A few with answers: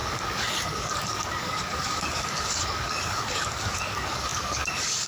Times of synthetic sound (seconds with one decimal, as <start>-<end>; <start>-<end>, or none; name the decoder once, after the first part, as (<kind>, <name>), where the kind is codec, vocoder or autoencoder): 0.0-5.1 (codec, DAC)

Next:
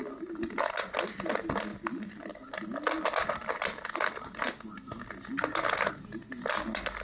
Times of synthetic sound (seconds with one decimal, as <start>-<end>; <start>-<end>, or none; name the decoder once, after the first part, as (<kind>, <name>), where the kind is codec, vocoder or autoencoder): none

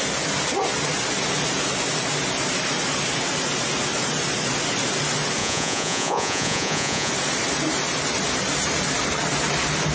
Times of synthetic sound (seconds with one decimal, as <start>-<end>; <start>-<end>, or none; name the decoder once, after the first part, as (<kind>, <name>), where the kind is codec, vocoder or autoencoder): 5.4-7.1 (vocoder, Vocos)

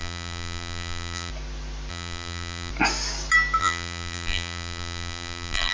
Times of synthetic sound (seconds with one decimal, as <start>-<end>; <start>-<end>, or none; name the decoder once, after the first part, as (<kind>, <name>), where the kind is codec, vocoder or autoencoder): 0.0-1.3 (vocoder, BigVGAN v2); 1.9-2.7; 3.6-5.7

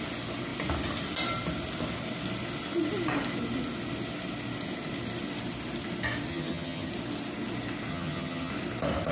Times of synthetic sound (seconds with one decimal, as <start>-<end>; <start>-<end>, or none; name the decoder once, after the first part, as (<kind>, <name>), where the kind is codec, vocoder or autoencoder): 6.3-6.9 (vocoder, HiFi-GAN); 7.9-8.5